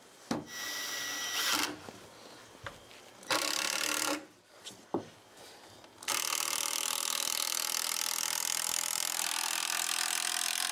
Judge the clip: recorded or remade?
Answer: recorded